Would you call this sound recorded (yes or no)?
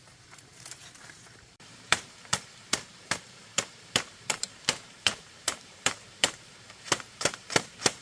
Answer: no